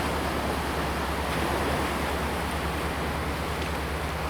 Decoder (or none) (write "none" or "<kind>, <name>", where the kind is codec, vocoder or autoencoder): none